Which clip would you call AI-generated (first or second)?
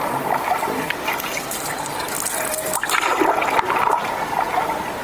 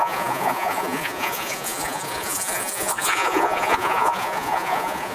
second